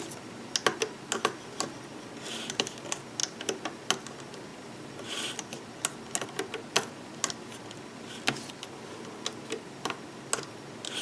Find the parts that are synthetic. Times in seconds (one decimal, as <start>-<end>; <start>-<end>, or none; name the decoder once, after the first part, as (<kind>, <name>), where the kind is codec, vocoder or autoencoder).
none